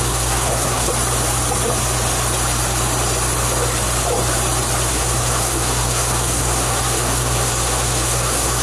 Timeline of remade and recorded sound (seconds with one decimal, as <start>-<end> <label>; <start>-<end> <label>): 0.0-0.9 remade; 0.9-4.9 recorded; 4.9-8.6 remade